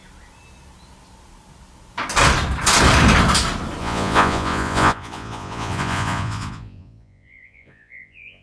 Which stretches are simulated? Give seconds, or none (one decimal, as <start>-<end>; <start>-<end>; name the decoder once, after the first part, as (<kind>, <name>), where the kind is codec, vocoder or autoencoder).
3.8-8.4 (vocoder, Vocos)